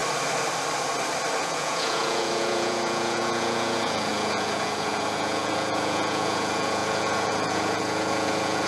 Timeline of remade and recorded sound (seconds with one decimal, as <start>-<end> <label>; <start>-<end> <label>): 0.0-1.4 recorded; 1.4-8.7 remade